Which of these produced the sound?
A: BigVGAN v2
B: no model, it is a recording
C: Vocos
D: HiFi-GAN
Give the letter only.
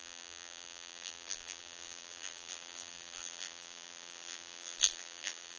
A